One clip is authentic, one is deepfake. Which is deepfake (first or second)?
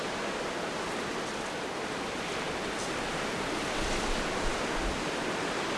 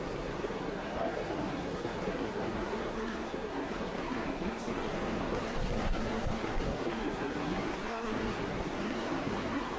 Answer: second